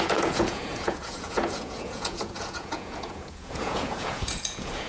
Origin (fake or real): fake